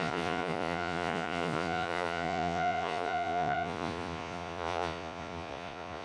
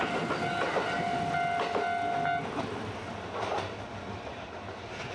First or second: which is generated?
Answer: first